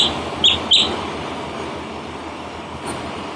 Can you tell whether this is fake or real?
real